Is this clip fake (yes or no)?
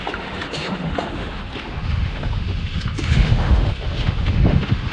yes